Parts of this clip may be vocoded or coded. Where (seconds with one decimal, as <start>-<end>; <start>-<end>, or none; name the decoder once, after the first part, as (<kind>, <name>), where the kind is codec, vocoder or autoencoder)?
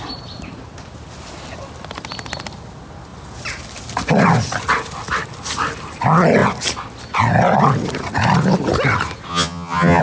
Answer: 9.3-10.0 (vocoder, HiFi-GAN)